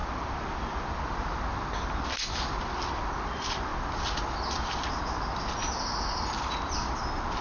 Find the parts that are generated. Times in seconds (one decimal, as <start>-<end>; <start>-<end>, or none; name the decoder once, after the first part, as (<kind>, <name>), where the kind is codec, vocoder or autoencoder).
none